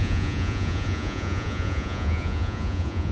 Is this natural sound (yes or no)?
no